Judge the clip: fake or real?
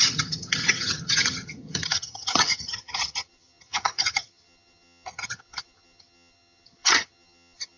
fake